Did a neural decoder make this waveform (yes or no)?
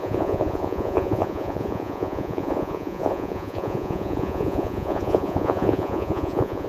yes